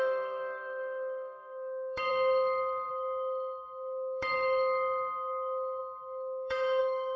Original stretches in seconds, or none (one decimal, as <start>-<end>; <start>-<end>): none